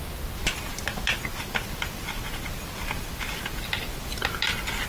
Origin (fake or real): real